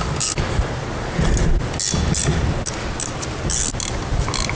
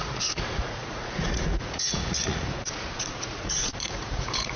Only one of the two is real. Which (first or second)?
first